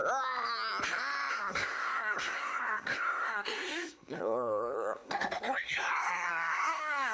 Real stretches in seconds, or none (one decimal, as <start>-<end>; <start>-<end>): 0.0-1.3